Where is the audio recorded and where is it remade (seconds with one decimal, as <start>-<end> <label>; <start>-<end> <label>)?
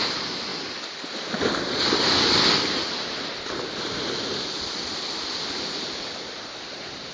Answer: 0.0-7.1 recorded